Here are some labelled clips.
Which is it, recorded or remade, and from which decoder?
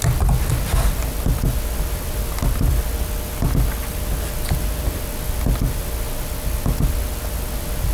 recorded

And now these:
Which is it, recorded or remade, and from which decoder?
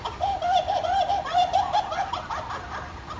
remade, vocoder, BigVGAN v2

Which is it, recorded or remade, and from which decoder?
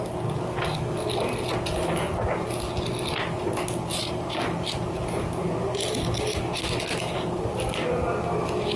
recorded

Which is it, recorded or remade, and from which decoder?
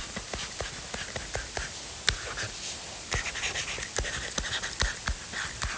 recorded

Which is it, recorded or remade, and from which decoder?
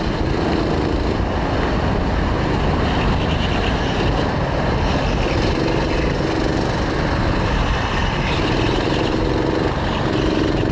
recorded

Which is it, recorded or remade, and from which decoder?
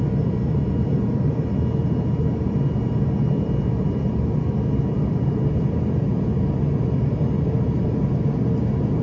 recorded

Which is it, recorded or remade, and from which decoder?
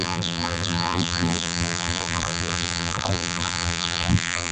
remade, vocoder, BigVGAN v2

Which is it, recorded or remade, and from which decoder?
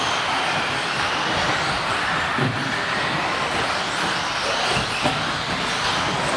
recorded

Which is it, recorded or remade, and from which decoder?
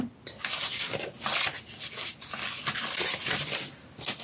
recorded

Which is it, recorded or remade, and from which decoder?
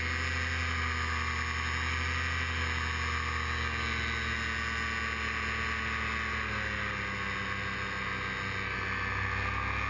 recorded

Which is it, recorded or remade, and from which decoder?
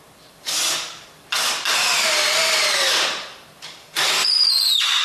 remade, vocoder, BigVGAN v2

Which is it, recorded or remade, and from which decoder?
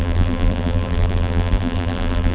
remade, vocoder, BigVGAN v2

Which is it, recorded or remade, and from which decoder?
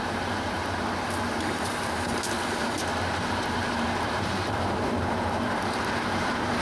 remade, vocoder, BigVGAN v2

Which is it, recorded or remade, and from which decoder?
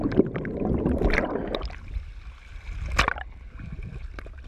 recorded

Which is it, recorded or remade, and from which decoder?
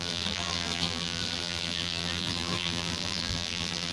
remade, vocoder, BigVGAN v2